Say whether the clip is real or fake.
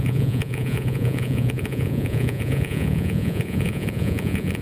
fake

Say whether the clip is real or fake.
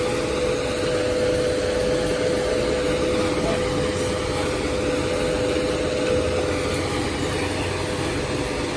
real